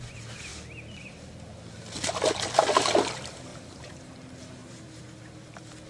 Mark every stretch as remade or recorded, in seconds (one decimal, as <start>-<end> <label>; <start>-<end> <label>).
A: 0.0-3.5 recorded; 3.5-4.1 remade; 4.1-4.6 recorded; 4.6-5.2 remade; 5.2-5.9 recorded